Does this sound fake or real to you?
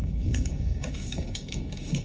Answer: fake